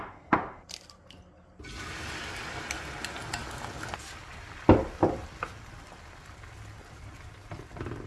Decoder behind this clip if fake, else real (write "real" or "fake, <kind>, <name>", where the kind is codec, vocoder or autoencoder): real